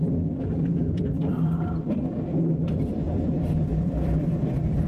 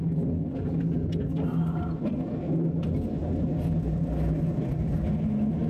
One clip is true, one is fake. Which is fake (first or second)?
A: first